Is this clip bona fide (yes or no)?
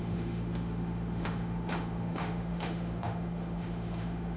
no